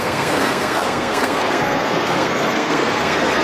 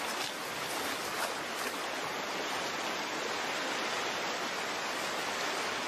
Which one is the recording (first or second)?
second